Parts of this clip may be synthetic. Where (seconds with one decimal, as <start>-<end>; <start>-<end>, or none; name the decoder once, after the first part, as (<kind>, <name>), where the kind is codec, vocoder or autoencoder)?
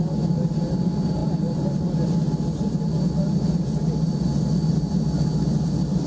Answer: none